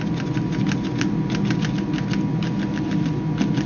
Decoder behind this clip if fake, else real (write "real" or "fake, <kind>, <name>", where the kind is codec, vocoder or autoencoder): real